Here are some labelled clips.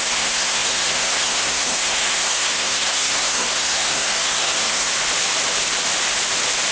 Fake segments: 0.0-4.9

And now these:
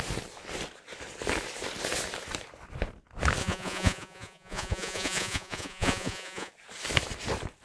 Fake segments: 3.4-6.5

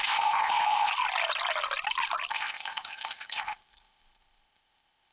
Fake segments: 0.0-0.9; 2.3-5.1

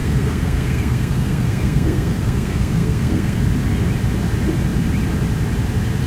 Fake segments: 0.0-3.4

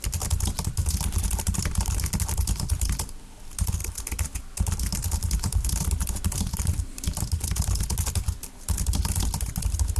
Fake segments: none

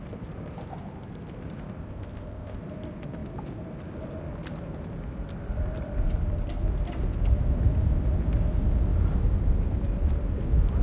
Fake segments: 1.8-2.6

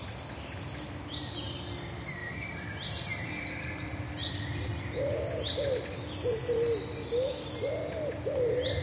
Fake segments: 2.2-4.8

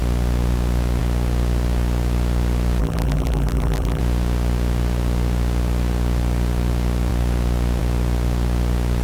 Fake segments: 2.8-4.0